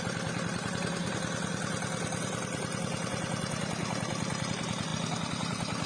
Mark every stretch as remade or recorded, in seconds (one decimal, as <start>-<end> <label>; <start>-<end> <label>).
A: 0.0-1.0 remade; 1.0-4.5 recorded; 4.5-5.9 remade